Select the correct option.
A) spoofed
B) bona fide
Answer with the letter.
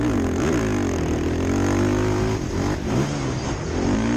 B